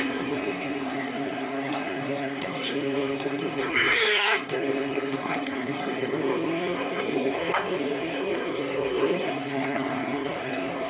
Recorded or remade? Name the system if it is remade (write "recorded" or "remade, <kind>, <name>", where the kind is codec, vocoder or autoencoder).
remade, codec, SNAC